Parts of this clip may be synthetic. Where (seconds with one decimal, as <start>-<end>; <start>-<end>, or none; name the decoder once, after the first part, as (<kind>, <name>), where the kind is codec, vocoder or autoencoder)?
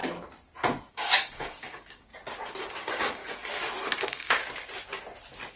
0.9-2.1 (codec, DAC); 2.6-3.2; 4.0-4.4